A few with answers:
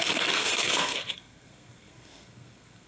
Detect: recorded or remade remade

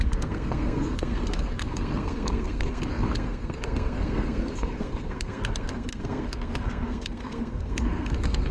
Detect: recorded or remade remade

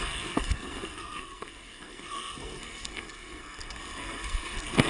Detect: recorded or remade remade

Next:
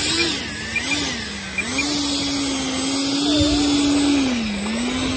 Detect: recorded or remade recorded